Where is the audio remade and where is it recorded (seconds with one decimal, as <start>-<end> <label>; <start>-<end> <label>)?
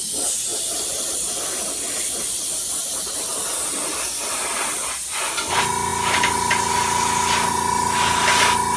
0.0-0.5 recorded; 0.5-5.2 remade; 5.2-8.8 recorded